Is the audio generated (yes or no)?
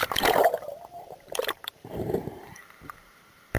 yes